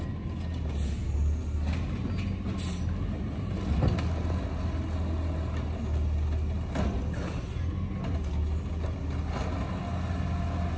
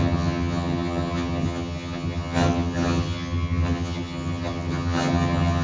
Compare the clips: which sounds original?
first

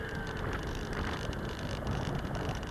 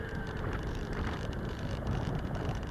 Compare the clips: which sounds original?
first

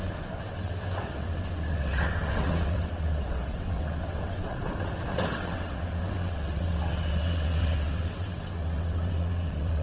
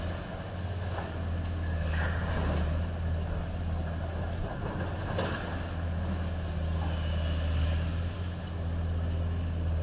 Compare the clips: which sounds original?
second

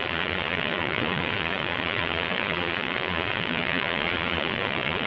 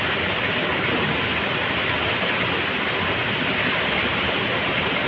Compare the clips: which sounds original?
second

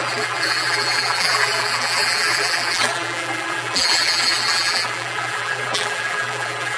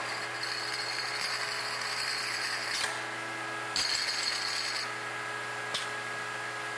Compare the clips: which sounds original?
second